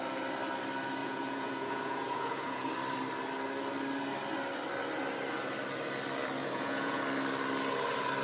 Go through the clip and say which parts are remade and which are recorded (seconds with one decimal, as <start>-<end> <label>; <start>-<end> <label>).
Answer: 0.0-1.0 recorded; 1.0-2.7 remade; 2.7-6.4 recorded; 6.4-7.0 remade; 7.0-8.2 recorded